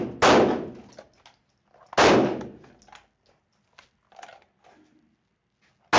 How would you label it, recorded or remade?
recorded